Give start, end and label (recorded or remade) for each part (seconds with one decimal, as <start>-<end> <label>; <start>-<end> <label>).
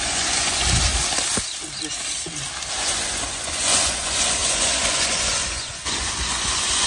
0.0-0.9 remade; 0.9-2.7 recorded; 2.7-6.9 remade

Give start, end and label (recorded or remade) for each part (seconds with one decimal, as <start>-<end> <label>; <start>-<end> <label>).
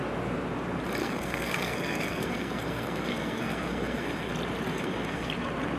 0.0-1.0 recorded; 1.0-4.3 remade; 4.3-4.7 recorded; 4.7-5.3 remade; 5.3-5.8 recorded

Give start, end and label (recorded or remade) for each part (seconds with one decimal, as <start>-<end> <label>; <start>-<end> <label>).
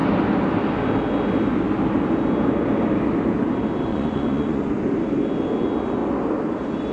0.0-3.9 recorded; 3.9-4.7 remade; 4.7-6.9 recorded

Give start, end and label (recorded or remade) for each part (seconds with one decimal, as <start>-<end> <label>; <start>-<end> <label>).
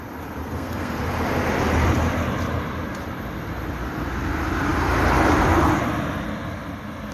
0.0-0.4 recorded; 0.4-1.0 remade; 1.0-7.1 recorded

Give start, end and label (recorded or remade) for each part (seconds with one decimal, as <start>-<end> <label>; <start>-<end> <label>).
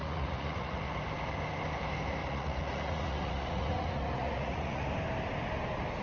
0.0-0.8 remade; 0.8-2.2 recorded; 2.2-4.9 remade; 4.9-6.0 recorded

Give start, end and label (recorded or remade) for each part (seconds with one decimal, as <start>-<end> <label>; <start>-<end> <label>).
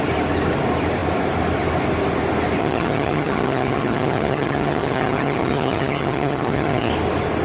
0.0-2.6 recorded; 2.6-6.9 remade; 6.9-7.4 recorded